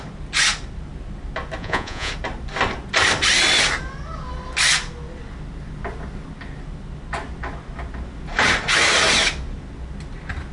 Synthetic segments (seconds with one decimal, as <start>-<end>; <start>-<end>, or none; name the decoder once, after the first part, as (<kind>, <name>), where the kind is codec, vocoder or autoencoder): 1.6-2.1 (vocoder, Vocos)